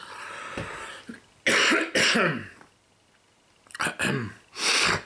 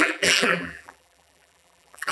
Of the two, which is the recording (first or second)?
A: first